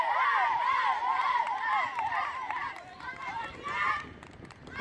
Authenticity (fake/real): real